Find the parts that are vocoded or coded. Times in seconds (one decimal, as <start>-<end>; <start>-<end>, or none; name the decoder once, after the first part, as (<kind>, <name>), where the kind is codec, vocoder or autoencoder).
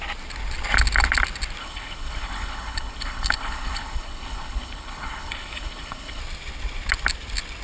1.6-6.2 (codec, HILCodec)